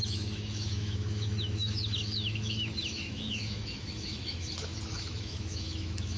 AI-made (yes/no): yes